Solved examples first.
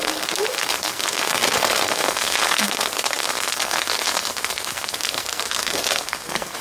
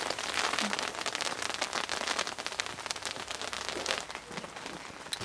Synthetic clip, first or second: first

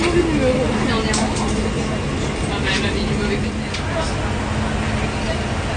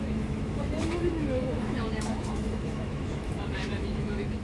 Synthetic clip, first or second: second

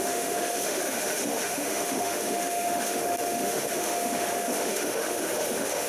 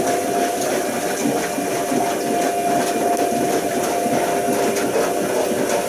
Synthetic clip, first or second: first